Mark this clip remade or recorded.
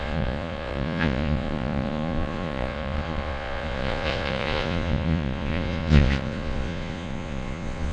remade